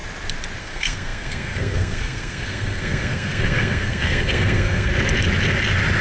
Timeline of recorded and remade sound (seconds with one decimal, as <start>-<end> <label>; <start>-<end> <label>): 0.0-0.6 recorded; 0.6-4.9 remade; 4.9-6.0 recorded